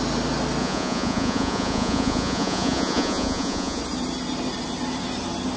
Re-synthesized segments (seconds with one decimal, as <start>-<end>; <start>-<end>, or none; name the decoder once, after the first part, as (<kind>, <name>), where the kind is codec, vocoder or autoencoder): 0.6-3.8 (vocoder, Vocos)